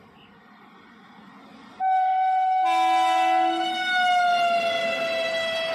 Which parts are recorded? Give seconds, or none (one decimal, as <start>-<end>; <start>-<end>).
0.0-5.7